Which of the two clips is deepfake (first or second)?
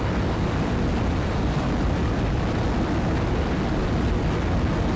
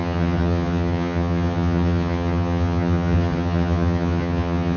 second